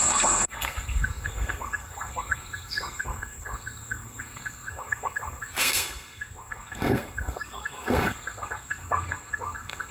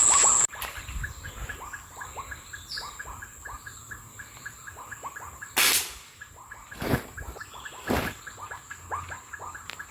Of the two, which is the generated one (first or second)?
first